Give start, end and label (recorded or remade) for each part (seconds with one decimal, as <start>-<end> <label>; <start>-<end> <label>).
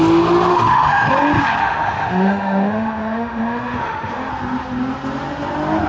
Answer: 0.0-0.5 recorded; 0.5-1.1 remade; 1.1-1.6 recorded; 1.6-4.3 remade; 4.3-5.9 recorded